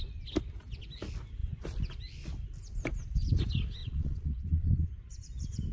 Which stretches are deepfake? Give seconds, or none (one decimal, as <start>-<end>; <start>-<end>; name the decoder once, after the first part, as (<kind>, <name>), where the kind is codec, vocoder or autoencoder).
3.8-4.9 (vocoder, Vocos)